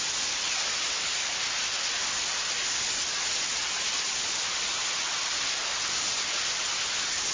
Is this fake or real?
real